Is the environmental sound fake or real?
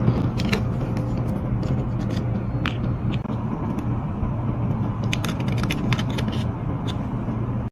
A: real